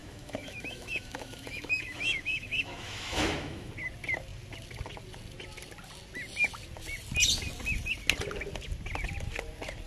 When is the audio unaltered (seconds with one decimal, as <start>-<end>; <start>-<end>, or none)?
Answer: 3.7-9.9